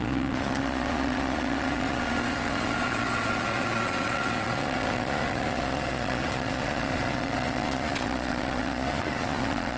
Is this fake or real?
fake